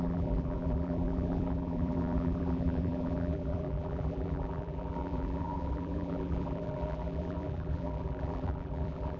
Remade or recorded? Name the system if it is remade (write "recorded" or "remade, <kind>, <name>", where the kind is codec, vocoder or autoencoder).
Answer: remade, vocoder, BigVGAN v2